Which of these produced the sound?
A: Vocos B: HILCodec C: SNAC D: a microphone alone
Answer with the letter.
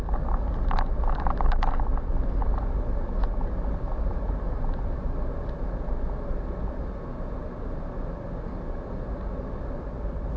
D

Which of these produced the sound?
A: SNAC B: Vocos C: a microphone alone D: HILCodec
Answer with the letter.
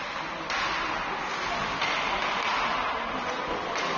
C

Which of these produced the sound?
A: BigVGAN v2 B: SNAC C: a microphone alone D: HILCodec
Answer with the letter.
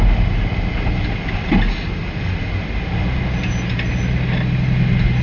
C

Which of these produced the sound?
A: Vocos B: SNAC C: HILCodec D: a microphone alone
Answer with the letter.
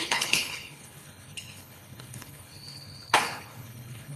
C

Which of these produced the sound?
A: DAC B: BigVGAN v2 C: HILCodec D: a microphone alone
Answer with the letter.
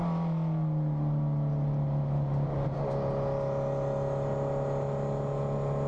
D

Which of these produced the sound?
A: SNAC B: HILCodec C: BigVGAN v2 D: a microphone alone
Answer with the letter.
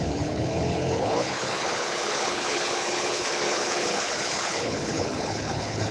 B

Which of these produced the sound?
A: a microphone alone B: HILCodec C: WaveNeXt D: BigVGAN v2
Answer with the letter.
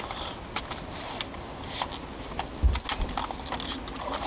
A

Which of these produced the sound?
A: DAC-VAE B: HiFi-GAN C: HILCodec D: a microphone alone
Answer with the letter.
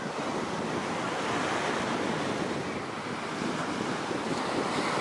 D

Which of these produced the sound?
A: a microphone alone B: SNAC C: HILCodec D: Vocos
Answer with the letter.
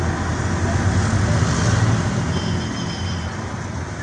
A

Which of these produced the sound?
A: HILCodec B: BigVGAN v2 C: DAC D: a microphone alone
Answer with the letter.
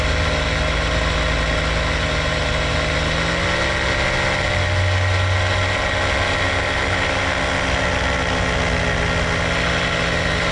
D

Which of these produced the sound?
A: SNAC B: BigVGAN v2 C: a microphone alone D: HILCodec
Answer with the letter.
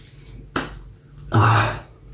C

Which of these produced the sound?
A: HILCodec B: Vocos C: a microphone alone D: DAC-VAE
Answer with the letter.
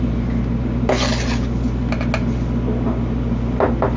C